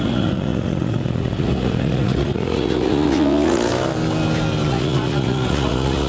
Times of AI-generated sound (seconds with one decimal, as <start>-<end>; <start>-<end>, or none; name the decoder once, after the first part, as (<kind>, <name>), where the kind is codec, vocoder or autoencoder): 0.0-3.7 (vocoder, Vocos); 4.7-6.1